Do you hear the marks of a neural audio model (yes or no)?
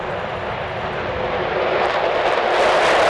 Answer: no